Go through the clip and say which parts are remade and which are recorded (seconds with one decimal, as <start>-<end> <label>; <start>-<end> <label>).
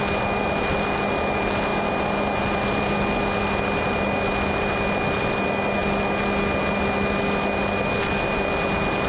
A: 0.0-9.1 recorded